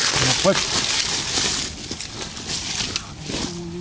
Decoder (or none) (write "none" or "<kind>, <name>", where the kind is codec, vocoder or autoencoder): none